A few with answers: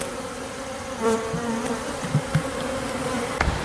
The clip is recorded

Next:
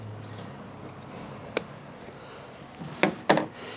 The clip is recorded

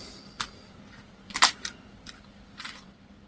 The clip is recorded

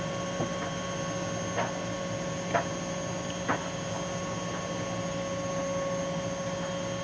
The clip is recorded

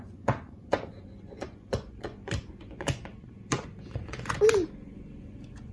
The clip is remade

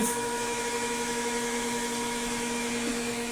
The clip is remade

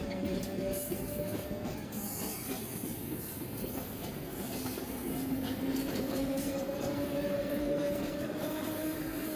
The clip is remade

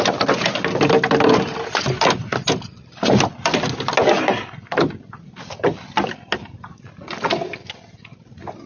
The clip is recorded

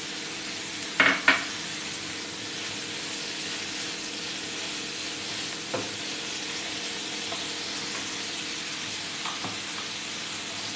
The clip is recorded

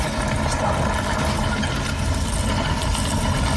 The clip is recorded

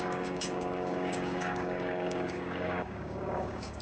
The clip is remade